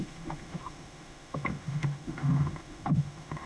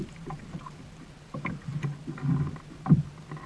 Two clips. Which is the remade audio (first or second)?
first